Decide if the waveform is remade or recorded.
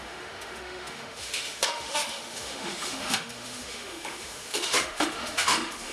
remade